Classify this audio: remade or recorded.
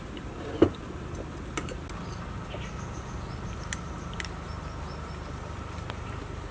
recorded